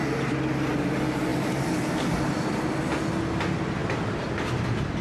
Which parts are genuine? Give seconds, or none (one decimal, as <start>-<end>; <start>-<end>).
0.0-5.0